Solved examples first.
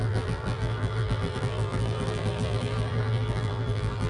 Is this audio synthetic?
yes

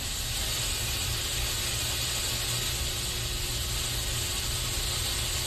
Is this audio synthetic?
no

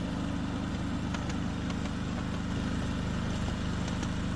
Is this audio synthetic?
no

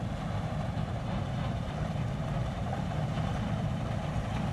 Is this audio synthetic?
yes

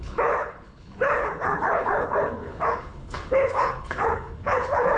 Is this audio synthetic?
yes